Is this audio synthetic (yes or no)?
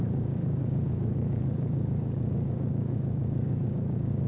yes